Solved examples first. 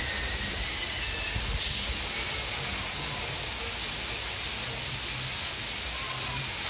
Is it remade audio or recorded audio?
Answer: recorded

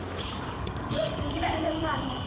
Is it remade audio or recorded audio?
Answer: remade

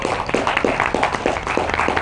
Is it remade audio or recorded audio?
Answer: recorded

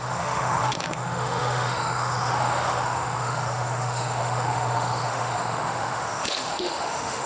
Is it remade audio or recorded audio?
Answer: remade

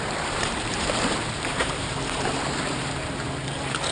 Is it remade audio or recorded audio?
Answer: remade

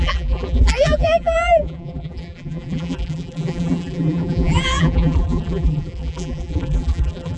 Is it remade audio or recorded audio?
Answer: remade